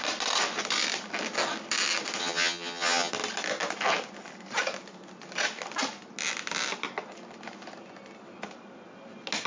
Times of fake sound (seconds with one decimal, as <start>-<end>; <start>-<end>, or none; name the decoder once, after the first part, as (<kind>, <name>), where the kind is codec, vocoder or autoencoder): 2.2-3.1 (vocoder, HiFi-GAN)